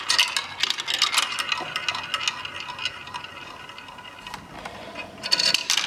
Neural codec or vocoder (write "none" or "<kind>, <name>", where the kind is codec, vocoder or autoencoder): none